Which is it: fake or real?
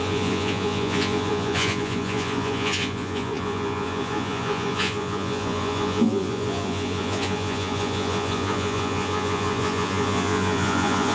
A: fake